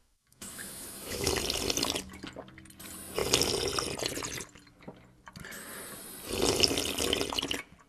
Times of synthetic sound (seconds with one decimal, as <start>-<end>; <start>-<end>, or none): 0.0-1.3